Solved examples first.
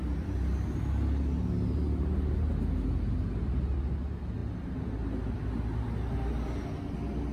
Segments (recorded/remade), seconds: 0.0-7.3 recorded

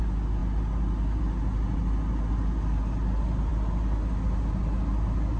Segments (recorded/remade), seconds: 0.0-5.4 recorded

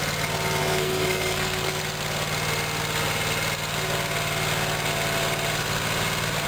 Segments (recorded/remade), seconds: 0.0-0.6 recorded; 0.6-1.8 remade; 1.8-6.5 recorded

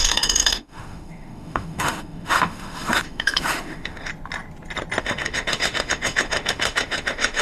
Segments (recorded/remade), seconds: 0.0-4.1 remade; 4.1-5.0 recorded; 5.0-7.4 remade

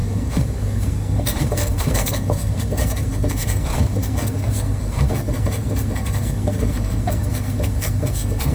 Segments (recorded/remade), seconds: 0.0-8.5 remade

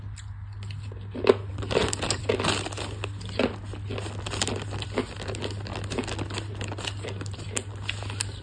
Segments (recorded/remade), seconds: 0.0-1.5 recorded; 1.5-2.2 remade; 2.2-8.4 recorded

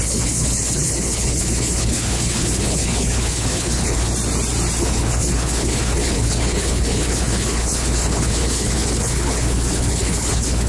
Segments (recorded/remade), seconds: 0.0-4.1 remade; 4.1-4.8 recorded; 4.8-10.7 remade

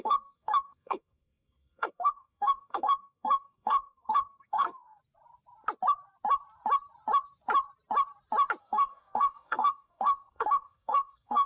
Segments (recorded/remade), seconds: 0.0-5.0 remade; 5.0-8.6 recorded; 8.6-11.5 remade